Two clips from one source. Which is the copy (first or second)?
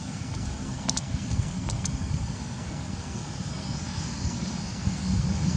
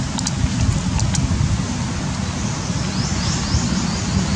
first